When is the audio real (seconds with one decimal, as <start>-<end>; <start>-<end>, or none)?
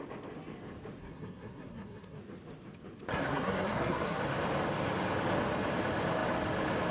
0.0-1.0; 2.2-3.1; 4.2-6.9